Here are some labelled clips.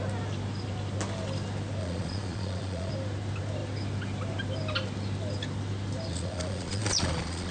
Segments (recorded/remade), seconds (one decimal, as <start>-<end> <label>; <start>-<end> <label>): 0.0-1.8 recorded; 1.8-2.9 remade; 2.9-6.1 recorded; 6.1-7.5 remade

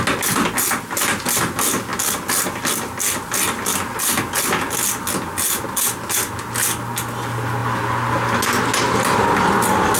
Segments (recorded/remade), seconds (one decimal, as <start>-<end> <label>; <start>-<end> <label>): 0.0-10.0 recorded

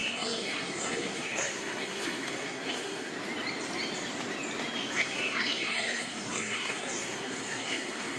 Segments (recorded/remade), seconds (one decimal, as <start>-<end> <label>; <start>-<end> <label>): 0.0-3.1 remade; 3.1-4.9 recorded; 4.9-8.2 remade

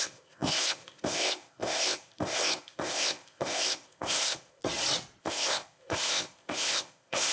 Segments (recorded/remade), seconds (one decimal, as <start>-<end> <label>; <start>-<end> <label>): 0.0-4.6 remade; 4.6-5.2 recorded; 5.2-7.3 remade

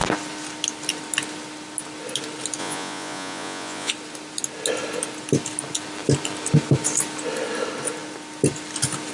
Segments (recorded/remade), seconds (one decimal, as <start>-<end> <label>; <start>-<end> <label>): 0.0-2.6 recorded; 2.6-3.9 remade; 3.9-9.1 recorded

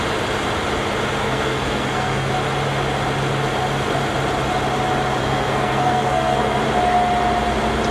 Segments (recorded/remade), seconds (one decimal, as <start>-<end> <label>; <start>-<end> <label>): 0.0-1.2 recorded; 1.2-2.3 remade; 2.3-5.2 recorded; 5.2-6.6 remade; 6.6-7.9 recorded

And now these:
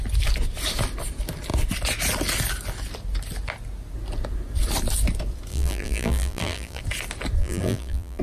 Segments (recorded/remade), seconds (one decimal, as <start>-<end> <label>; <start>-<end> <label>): 0.0-5.5 recorded; 5.5-6.8 remade; 6.8-7.4 recorded; 7.4-8.2 remade